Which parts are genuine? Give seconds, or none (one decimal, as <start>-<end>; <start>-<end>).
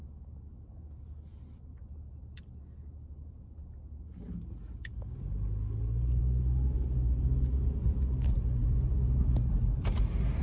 0.0-8.6; 9.2-10.4